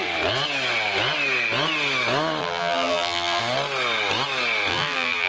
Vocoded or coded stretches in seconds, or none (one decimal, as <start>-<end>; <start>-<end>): 2.4-3.4; 4.7-5.3